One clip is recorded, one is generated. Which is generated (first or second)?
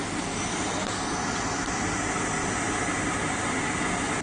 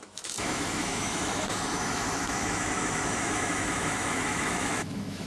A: second